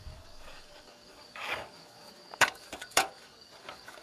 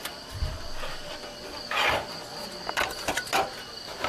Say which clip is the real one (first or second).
second